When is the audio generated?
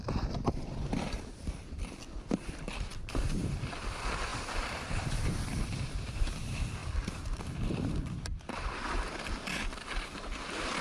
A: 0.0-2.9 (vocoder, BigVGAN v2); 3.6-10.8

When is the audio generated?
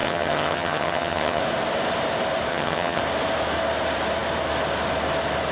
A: 0.0-1.4 (vocoder, HiFi-GAN); 2.5-3.0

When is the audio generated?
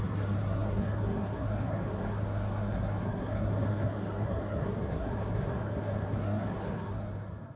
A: 0.0-7.6 (codec, SNAC)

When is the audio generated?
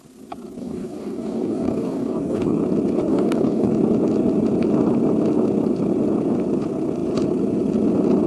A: 0.6-2.6 (codec, DAC); 3.1-3.7